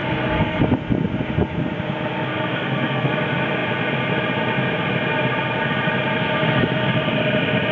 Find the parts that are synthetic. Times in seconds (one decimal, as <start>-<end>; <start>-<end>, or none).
0.0-0.6; 2.3-3.1